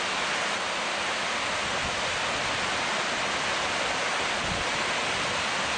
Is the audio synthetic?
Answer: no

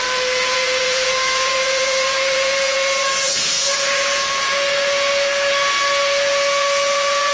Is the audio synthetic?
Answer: yes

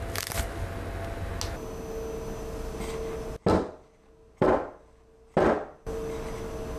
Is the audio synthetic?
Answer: no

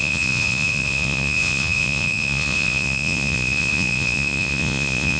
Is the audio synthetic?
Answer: yes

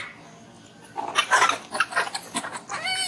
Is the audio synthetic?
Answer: no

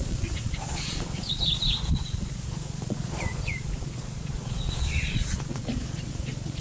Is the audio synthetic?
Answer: yes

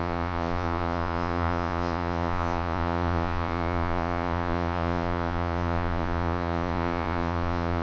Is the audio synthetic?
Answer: yes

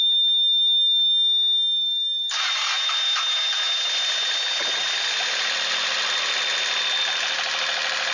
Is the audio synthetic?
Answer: no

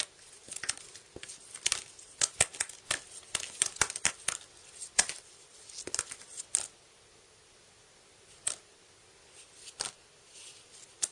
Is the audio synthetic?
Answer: no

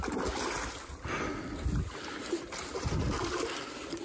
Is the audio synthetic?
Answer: no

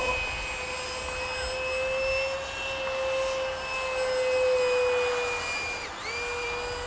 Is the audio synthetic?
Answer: no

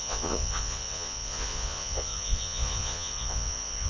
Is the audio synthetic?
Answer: yes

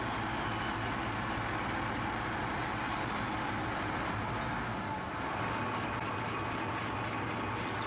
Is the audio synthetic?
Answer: no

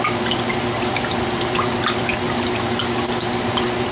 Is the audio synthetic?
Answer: no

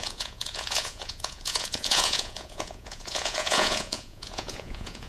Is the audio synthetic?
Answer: yes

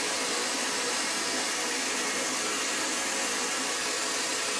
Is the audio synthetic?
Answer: no